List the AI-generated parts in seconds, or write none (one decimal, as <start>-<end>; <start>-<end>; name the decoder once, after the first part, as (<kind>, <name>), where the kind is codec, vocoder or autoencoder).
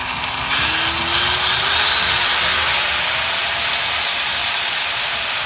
4.4-5.0 (vocoder, Vocos)